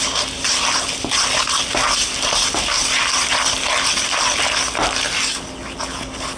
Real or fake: real